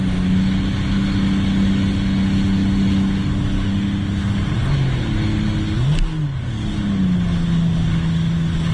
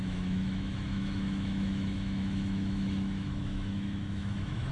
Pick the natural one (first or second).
first